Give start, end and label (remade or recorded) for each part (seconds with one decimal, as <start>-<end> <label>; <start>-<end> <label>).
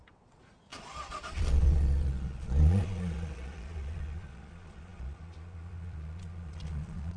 0.0-7.2 remade